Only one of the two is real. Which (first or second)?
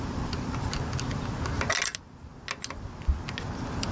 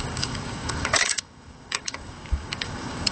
first